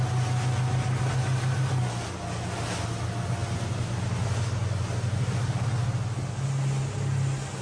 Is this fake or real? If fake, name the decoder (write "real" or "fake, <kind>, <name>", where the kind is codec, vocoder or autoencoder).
real